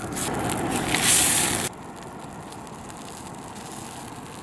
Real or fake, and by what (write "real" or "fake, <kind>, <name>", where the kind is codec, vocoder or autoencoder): real